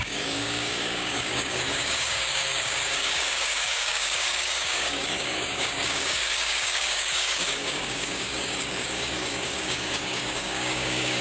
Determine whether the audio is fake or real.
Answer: fake